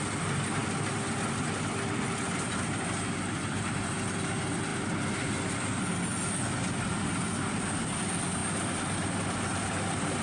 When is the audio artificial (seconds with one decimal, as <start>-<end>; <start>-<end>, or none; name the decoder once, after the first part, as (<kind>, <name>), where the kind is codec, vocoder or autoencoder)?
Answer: none